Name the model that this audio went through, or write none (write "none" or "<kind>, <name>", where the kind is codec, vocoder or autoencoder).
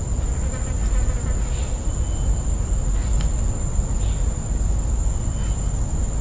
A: none